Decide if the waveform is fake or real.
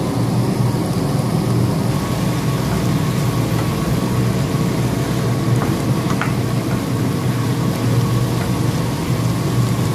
real